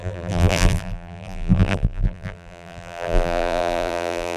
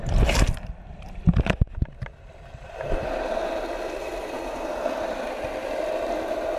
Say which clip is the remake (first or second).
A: first